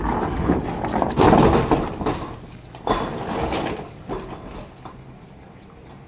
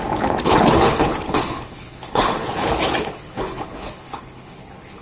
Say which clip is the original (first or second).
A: first